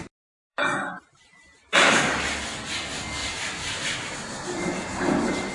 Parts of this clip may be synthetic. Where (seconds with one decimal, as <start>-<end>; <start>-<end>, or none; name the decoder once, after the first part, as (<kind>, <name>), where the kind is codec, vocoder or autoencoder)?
0.5-2.0 (vocoder, BigVGAN v2); 3.2-5.5